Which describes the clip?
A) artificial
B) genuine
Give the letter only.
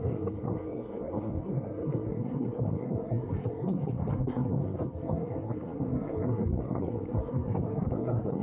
A